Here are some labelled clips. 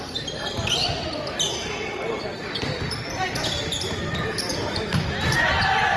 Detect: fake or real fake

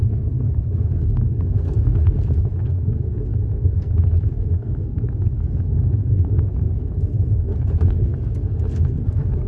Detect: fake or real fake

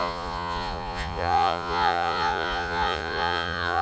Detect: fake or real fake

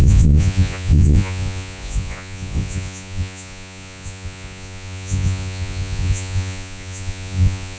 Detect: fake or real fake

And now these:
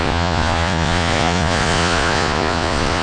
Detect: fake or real fake